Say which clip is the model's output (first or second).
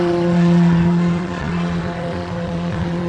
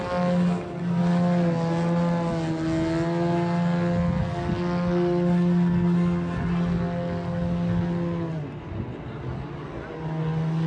first